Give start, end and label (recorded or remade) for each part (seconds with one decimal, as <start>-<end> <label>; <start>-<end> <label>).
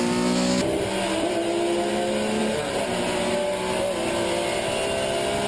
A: 0.0-5.5 recorded